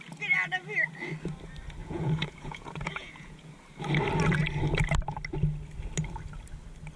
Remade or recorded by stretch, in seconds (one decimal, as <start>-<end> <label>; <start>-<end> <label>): 0.0-1.8 recorded; 1.8-3.5 remade; 3.5-7.0 recorded